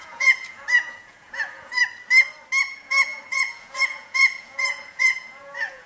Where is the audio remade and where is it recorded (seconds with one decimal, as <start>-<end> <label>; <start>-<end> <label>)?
0.0-1.8 remade; 1.8-2.6 recorded; 2.6-5.9 remade